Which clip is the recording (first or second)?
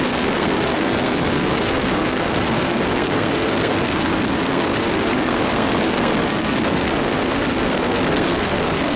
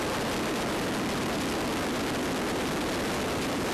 second